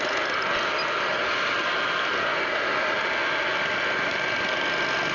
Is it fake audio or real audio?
real